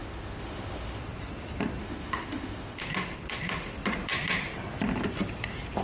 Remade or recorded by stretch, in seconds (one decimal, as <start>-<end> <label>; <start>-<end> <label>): 0.0-1.0 remade; 1.0-1.8 recorded; 1.8-2.8 remade; 2.8-5.8 recorded